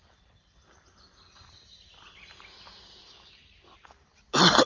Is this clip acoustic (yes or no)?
yes